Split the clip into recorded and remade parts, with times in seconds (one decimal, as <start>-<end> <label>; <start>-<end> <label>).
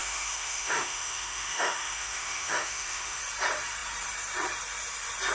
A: 0.0-3.2 remade; 3.2-5.3 recorded